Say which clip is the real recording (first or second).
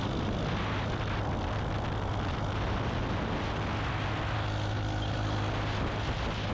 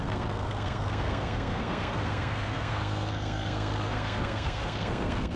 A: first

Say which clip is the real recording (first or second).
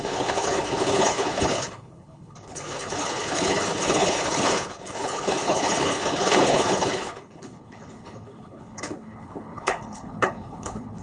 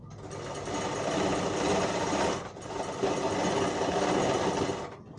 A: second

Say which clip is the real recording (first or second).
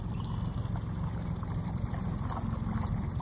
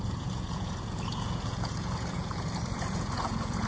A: first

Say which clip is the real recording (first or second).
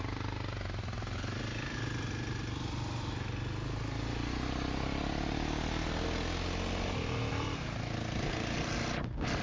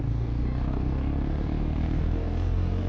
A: first